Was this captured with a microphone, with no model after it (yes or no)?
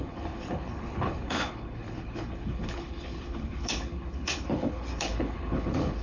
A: no